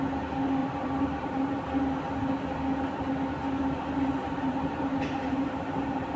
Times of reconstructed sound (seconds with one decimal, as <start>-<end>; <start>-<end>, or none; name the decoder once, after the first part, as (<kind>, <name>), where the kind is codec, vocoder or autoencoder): 0.6-1.6 (vocoder, BigVGAN v2); 4.2-6.2